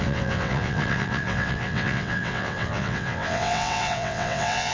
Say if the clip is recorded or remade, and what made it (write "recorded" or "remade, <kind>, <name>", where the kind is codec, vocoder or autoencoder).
remade, vocoder, WaveNeXt